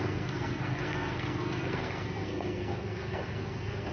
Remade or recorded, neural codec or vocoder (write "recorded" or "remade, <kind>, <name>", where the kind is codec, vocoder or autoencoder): remade, codec, SNAC